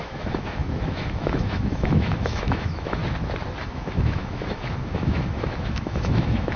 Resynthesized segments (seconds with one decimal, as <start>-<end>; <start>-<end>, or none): 0.0-3.0; 3.6-6.6